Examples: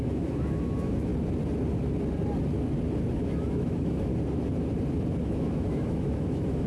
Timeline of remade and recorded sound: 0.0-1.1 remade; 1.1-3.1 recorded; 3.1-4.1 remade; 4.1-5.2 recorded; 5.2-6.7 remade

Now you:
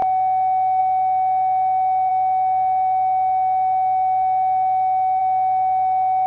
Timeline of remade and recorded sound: 0.0-6.3 recorded

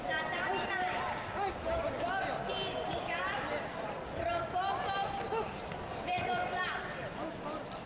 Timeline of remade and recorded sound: 0.0-7.9 recorded

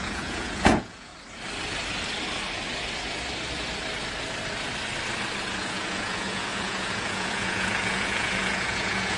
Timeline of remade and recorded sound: 0.0-1.1 remade; 1.1-5.4 recorded; 5.4-9.2 remade